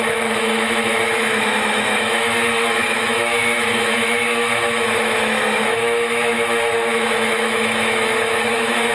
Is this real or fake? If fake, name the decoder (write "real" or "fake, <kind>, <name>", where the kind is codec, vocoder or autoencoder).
fake, autoencoder, DAC-VAE